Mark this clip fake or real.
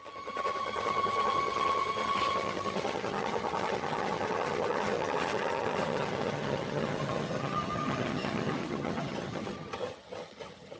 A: fake